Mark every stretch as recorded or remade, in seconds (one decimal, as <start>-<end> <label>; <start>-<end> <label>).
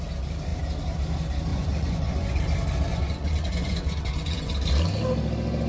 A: 0.0-1.5 recorded; 1.5-2.4 remade; 2.4-2.9 recorded; 2.9-4.5 remade; 4.5-5.7 recorded